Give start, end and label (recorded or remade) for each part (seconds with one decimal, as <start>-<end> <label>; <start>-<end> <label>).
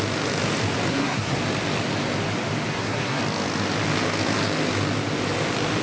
0.0-0.9 recorded; 0.9-1.4 remade; 1.4-2.7 recorded; 2.7-3.2 remade; 3.2-5.8 recorded